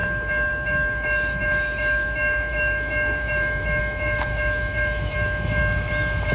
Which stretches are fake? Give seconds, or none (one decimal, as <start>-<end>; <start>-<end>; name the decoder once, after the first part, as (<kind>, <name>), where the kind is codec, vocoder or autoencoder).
0.0-5.6 (autoencoder, DAC-VAE)